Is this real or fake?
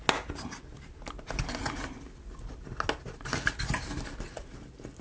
real